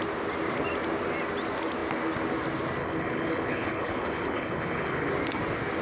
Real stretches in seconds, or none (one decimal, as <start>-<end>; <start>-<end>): 0.0-2.8; 5.1-5.8